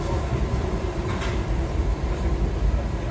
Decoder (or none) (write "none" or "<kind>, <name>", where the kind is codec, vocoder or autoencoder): vocoder, BigVGAN v2